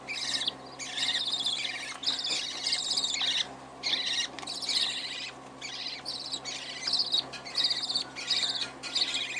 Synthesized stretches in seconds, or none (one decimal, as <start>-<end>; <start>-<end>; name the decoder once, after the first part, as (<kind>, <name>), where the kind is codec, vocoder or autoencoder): none